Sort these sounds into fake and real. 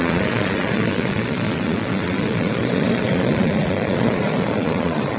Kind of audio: fake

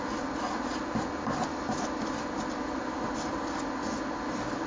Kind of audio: real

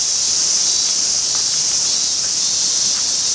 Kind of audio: real